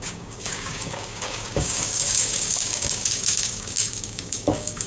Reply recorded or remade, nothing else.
remade